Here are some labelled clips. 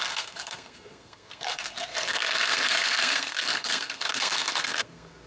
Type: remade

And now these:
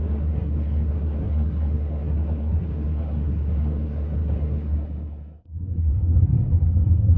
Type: remade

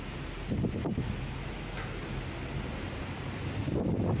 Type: recorded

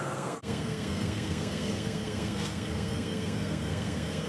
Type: remade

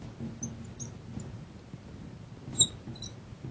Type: recorded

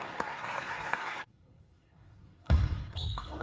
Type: remade